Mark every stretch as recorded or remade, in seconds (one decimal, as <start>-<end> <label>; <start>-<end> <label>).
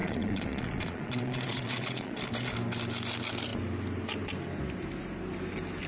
0.0-2.2 remade; 2.2-5.9 recorded